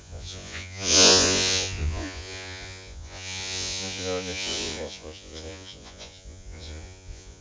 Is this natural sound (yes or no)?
no